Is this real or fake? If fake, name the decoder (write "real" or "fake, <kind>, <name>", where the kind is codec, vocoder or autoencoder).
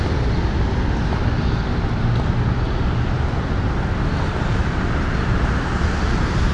real